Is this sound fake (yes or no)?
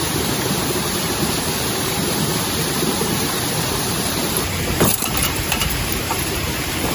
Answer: yes